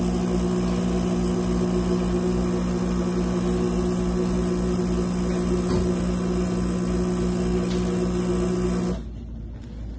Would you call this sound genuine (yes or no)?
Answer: yes